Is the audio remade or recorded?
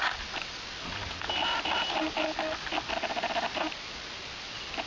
recorded